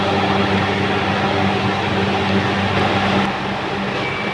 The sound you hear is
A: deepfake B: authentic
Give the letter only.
B